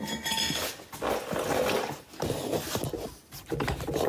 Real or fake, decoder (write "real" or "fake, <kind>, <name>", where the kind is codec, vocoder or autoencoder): real